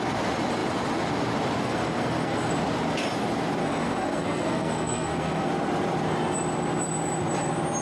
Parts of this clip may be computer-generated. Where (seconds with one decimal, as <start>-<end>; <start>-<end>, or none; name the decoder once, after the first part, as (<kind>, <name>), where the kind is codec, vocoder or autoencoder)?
1.6-2.5 (codec, SNAC); 3.6-5.5